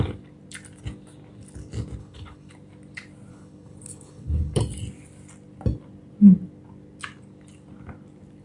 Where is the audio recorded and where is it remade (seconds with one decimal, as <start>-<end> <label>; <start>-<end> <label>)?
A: 0.0-2.0 recorded; 2.0-2.5 remade; 2.5-3.3 recorded; 3.3-4.6 remade; 4.6-8.4 recorded